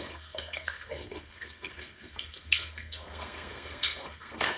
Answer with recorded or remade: remade